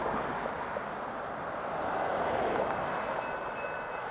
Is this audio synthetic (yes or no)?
no